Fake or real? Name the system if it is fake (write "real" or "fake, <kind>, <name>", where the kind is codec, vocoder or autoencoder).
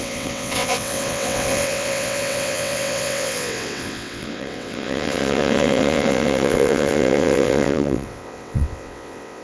fake, vocoder, WaveNeXt